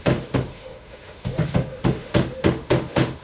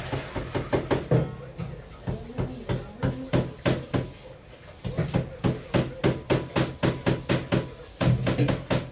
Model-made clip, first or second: first